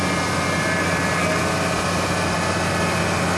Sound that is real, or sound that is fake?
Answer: real